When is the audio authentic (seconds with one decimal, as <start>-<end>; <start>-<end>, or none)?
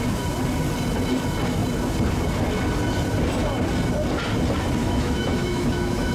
0.0-4.8